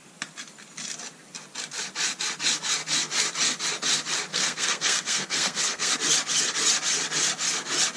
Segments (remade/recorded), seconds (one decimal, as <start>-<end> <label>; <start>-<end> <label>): 0.0-4.3 recorded; 4.3-5.9 remade; 5.9-8.0 recorded

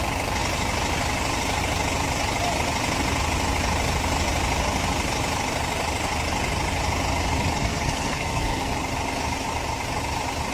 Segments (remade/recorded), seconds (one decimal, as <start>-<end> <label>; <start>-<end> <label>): 0.0-7.6 recorded; 7.6-8.7 remade; 8.7-10.5 recorded

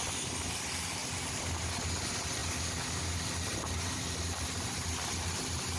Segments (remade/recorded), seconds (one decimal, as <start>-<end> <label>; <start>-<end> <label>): 0.0-5.8 recorded